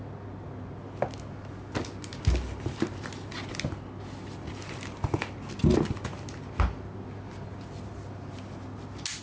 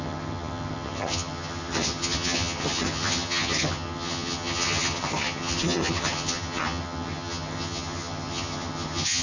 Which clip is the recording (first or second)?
first